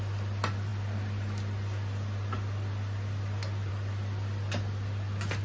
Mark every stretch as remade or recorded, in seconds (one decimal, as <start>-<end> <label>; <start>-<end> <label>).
0.0-5.4 recorded